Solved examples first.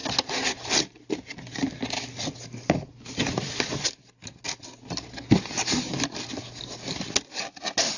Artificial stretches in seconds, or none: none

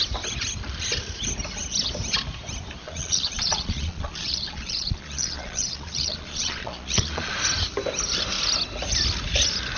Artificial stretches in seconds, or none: 2.8-7.3 (vocoder, Vocos)